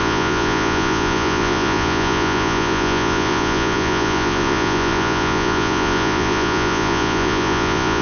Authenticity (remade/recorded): remade